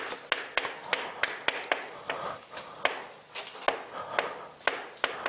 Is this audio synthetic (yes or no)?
no